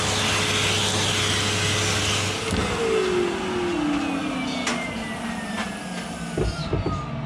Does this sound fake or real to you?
real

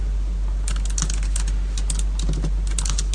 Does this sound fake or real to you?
real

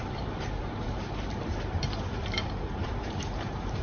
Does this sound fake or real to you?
fake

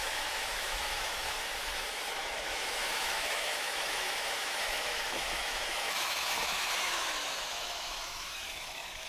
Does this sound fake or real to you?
fake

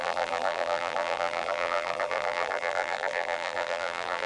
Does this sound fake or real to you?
fake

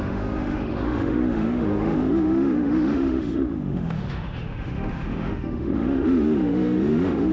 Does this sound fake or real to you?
fake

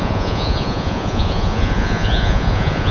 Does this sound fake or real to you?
fake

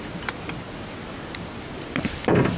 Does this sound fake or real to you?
real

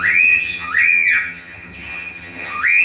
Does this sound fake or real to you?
fake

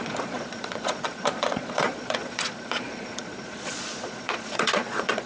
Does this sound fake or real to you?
fake